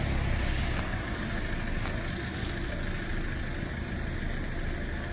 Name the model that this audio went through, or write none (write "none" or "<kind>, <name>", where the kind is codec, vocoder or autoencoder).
none